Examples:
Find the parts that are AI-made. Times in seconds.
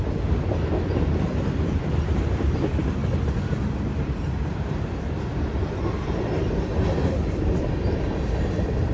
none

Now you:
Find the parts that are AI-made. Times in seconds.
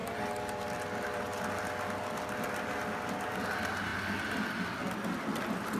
none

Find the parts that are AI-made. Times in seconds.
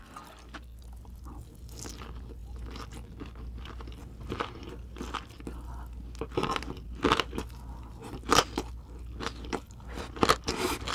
none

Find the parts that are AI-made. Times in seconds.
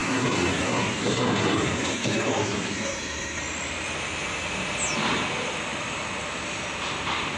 0.0-3.4 (codec, SNAC)